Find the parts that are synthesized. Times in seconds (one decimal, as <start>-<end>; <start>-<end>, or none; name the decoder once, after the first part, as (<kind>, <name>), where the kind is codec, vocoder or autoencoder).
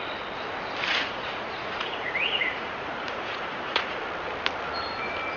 0.9-4.0 (vocoder, Vocos)